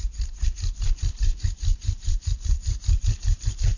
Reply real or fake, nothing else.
fake